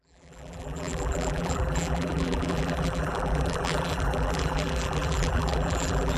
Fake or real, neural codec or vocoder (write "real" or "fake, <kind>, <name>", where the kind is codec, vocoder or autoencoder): fake, vocoder, BigVGAN v2